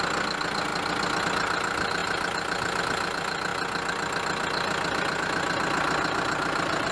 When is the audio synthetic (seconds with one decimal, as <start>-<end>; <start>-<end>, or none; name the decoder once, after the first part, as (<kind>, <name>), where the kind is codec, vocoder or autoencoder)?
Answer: none